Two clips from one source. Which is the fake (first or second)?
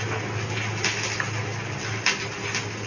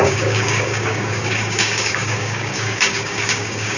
second